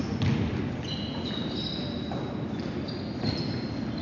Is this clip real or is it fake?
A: real